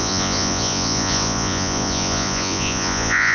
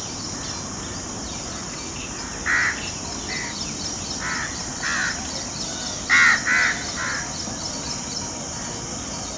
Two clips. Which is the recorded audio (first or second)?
second